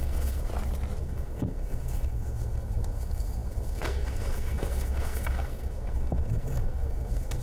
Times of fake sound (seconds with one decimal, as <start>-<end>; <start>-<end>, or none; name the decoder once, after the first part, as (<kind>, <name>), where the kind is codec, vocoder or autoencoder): 0.0-0.5 (codec, SNAC); 1.0-7.4